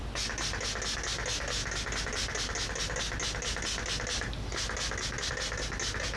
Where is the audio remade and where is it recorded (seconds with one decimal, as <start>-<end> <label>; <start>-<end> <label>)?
0.0-6.2 recorded